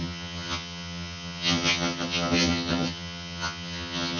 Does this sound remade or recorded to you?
remade